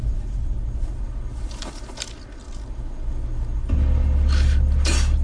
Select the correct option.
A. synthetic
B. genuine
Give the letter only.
B